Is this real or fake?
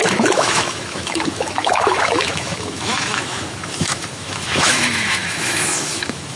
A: fake